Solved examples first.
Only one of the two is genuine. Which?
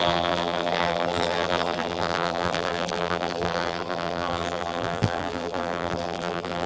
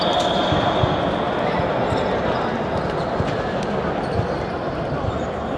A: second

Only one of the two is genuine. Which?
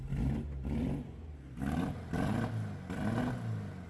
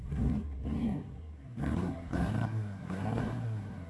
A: first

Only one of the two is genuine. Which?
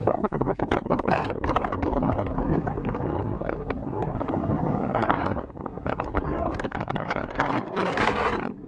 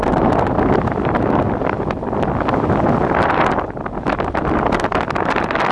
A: second